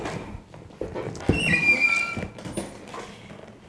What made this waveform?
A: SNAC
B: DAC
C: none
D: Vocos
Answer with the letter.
C